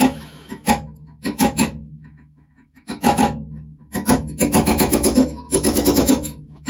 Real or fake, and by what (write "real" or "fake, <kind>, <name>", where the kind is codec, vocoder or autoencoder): fake, autoencoder, DAC-VAE